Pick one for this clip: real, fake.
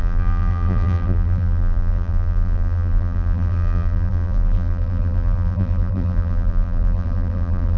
fake